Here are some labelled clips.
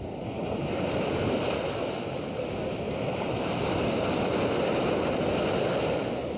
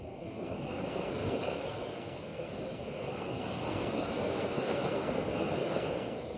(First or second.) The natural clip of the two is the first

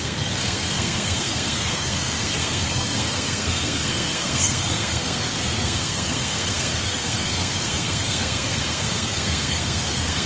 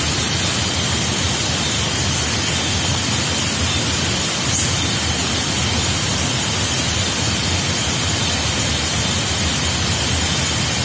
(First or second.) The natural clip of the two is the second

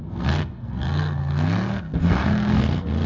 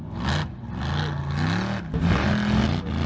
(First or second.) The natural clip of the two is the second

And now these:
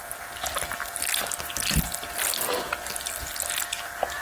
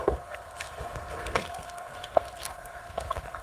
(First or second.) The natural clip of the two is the first